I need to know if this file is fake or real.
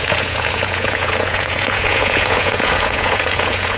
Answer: fake